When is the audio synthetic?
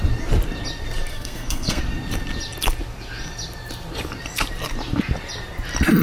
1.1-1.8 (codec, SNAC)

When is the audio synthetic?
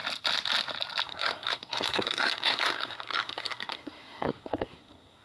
1.0-5.2 (codec, SNAC)